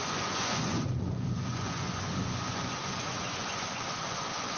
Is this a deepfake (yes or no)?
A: yes